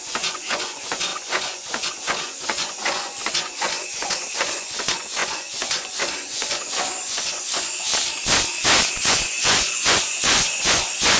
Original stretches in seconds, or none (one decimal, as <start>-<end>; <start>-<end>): 7.9-9.0